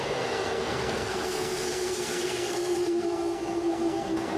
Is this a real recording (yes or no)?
no